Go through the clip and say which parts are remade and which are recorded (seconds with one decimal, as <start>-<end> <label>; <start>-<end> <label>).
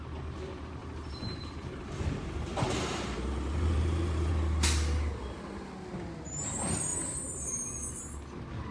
0.0-0.8 recorded; 0.8-4.3 remade; 4.3-6.9 recorded; 6.9-8.0 remade; 8.0-8.7 recorded